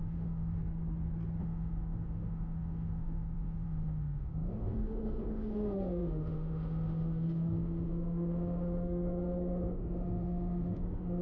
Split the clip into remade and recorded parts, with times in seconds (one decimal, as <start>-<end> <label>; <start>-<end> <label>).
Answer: 0.0-0.6 remade; 0.6-1.4 recorded; 1.4-11.2 remade